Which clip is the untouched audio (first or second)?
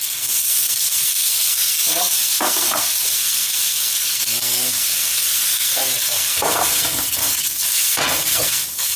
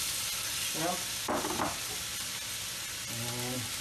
second